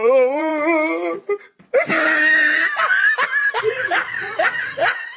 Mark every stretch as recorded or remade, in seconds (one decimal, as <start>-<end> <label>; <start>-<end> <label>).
0.0-0.5 remade; 0.5-3.6 recorded; 3.6-5.2 remade